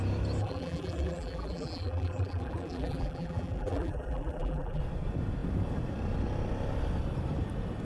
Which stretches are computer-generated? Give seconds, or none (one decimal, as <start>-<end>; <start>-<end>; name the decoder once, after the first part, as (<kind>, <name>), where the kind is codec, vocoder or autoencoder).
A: 0.4-4.8 (vocoder, BigVGAN v2)